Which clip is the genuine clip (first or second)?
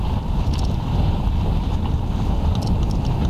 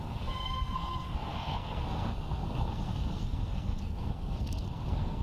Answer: first